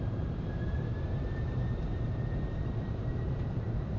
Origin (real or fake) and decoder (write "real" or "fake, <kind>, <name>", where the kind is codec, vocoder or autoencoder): fake, vocoder, BigVGAN v2